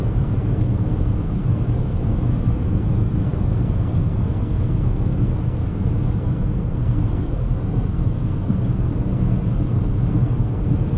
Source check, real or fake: fake